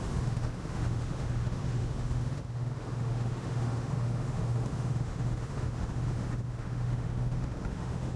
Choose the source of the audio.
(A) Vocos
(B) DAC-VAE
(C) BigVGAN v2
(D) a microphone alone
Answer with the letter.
B